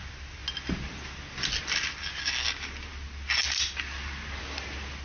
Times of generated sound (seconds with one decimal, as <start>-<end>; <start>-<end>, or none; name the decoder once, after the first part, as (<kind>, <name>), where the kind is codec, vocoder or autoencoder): none